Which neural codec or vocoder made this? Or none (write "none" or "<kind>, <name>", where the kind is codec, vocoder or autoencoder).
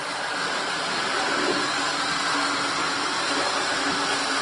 none